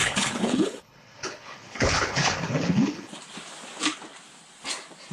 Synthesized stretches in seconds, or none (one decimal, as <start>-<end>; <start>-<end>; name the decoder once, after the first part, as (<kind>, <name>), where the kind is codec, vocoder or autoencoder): 0.0-3.1 (codec, HILCodec)